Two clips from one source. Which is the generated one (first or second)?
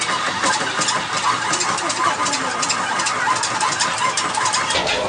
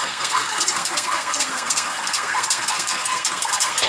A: second